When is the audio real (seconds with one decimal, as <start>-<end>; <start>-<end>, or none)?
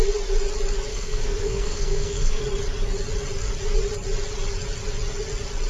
0.0-0.9; 2.4-5.7